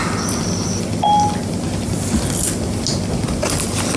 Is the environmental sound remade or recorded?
recorded